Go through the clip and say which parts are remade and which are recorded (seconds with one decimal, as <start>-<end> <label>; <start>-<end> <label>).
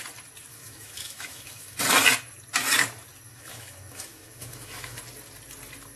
0.0-0.5 recorded; 0.5-1.8 remade; 1.8-3.3 recorded; 3.3-5.0 remade; 5.0-6.0 recorded